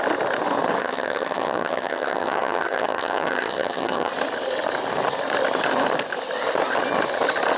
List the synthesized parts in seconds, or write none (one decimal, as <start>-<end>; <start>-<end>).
0.8-4.1